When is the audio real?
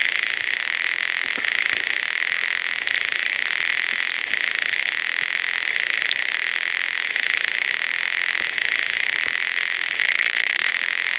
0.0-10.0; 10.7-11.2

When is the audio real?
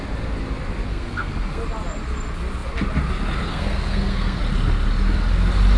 0.0-0.9; 1.6-3.5; 4.4-5.8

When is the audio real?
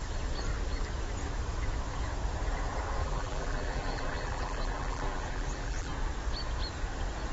0.0-3.0; 5.9-7.3